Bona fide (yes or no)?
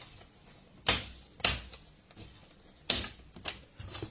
yes